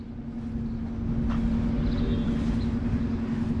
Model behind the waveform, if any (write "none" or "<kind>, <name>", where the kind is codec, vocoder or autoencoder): none